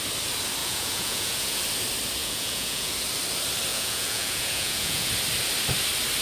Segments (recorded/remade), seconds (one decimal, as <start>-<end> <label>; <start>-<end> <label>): 0.0-0.6 recorded; 0.6-1.6 remade; 1.6-2.2 recorded; 2.2-2.9 remade; 2.9-3.7 recorded; 3.7-5.1 remade; 5.1-6.2 recorded

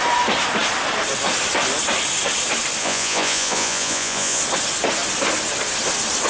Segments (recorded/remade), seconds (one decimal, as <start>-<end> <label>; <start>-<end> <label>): 0.0-2.8 recorded; 2.8-4.4 remade; 4.4-6.3 recorded

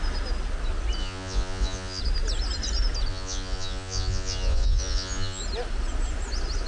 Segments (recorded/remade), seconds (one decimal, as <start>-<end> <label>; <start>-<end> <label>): 0.0-1.0 recorded; 1.0-2.0 remade; 2.0-3.1 recorded; 3.1-5.4 remade; 5.4-6.7 recorded

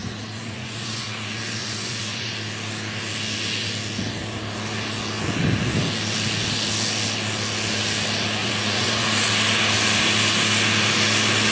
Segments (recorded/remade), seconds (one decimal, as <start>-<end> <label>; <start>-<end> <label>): 0.0-2.3 remade; 2.3-8.4 recorded; 8.4-9.3 remade; 9.3-11.5 recorded

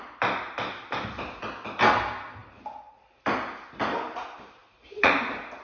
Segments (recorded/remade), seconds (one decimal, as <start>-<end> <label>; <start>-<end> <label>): 0.0-4.6 recorded; 4.6-5.1 remade; 5.1-5.6 recorded

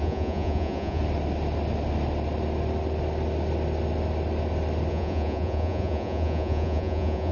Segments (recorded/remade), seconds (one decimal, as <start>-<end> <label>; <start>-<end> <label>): 0.0-1.0 remade; 1.0-4.9 recorded; 4.9-7.3 remade

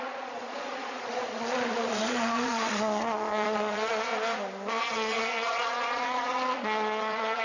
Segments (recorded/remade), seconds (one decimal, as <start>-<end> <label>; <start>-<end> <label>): 0.0-4.1 remade; 4.1-4.7 recorded; 4.7-7.4 remade